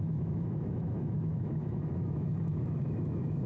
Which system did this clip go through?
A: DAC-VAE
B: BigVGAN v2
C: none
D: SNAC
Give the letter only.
A